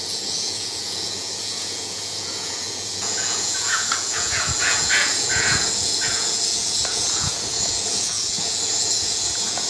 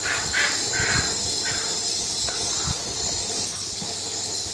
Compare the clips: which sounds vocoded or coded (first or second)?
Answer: first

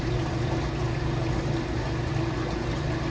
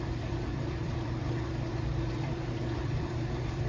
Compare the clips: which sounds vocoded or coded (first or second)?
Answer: second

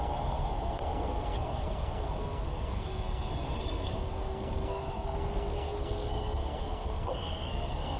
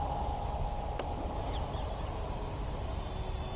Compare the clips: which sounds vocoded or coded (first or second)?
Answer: first